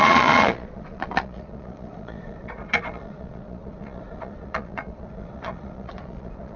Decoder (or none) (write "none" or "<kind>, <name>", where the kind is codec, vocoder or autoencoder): vocoder, Vocos